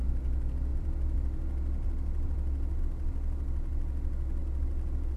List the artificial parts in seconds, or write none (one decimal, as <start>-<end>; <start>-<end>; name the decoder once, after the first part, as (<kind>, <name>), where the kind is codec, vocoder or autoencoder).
0.7-2.8 (vocoder, BigVGAN v2); 4.4-5.2